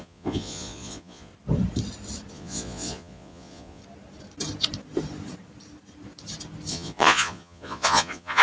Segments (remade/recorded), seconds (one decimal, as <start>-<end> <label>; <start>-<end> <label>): 0.0-1.3 remade; 1.3-2.3 recorded; 2.3-3.8 remade; 3.8-6.7 recorded; 6.7-8.4 remade